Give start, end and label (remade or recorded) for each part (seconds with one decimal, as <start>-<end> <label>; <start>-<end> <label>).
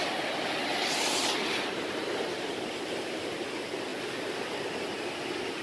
0.0-0.7 recorded; 0.7-3.2 remade; 3.2-5.6 recorded